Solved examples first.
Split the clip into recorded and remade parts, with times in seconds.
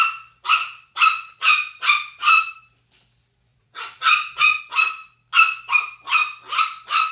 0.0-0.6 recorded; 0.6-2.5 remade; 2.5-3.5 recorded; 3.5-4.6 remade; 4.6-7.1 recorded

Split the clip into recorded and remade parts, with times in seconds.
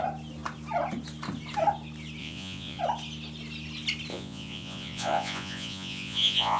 0.0-2.2 recorded; 2.2-2.8 remade; 2.8-4.1 recorded; 4.1-6.6 remade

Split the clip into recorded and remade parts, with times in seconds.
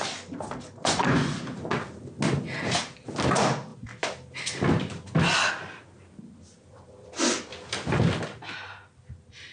0.0-0.8 recorded; 0.8-1.4 remade; 1.4-9.5 recorded